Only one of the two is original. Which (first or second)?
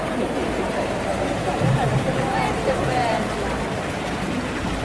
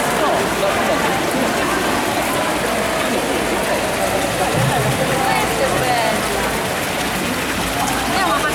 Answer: second